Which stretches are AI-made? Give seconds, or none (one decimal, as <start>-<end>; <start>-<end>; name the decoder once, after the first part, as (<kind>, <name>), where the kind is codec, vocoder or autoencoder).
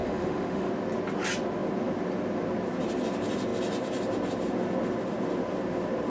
0.0-0.7 (autoencoder, DAC-VAE)